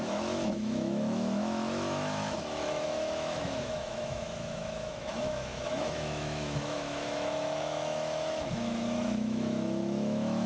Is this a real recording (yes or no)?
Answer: no